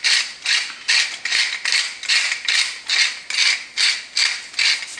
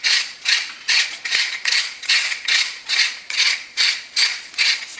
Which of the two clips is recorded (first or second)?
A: first